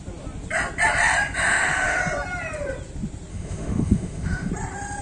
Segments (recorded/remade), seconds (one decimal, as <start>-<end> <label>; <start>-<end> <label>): 0.0-1.5 recorded; 1.5-2.0 remade; 2.0-3.3 recorded; 3.3-4.5 remade; 4.5-5.0 recorded